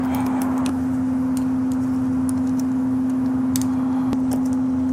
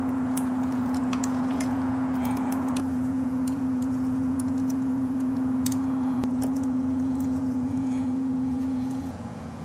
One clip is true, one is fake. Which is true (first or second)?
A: first